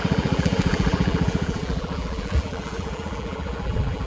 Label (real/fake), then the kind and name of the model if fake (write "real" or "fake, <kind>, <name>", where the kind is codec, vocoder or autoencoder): fake, vocoder, BigVGAN v2